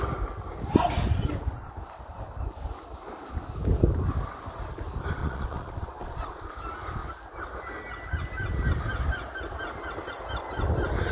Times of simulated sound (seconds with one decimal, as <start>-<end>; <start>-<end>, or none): 5.2-6.5